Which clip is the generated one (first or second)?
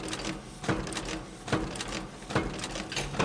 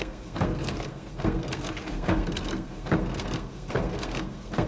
second